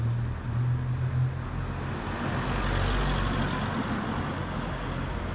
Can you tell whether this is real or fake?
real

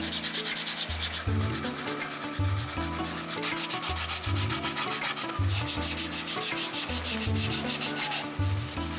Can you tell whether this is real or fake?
real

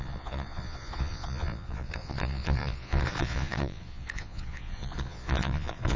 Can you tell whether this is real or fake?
fake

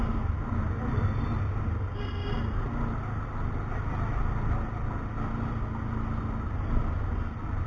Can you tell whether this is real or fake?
real